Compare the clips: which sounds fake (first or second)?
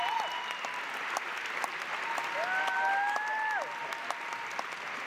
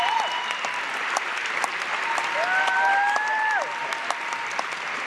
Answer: second